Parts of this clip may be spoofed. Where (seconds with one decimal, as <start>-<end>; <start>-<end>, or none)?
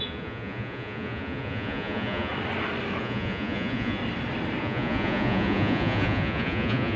0.0-2.3; 3.0-4.0; 4.6-7.0